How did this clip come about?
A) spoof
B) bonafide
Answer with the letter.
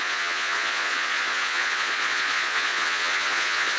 A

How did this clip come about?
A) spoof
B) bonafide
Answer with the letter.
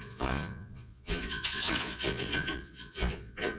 A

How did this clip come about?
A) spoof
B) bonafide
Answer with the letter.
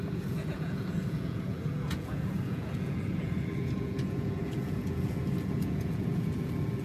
A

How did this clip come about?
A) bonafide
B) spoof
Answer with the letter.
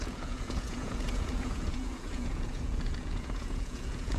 B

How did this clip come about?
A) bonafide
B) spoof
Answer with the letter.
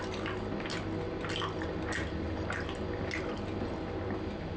A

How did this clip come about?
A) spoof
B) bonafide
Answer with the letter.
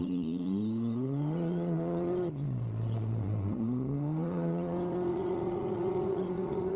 A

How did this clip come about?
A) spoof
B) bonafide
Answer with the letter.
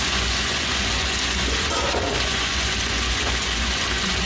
A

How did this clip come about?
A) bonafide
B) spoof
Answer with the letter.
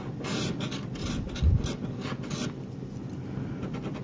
A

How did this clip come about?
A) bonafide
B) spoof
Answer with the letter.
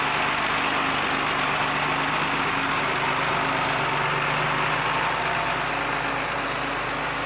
A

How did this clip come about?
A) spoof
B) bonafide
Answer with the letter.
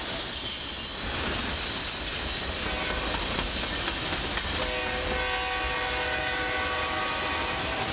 B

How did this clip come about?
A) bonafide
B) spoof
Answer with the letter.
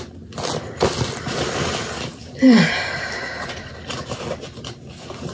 A